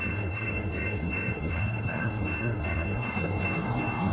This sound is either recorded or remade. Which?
remade